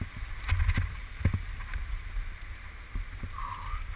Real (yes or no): yes